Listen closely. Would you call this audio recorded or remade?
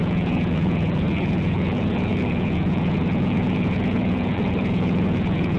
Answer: remade